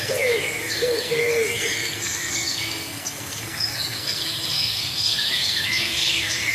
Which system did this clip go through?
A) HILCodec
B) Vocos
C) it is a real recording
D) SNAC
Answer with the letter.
D